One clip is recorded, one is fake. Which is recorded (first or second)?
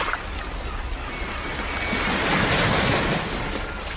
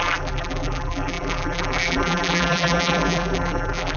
first